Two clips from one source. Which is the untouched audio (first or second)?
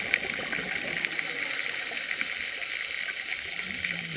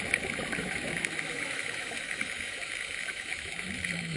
first